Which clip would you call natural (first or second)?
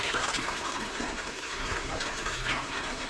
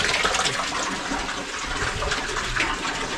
second